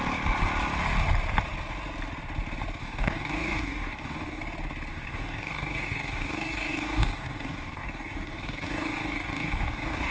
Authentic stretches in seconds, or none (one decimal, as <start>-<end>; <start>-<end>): 0.0-2.8; 4.4-4.9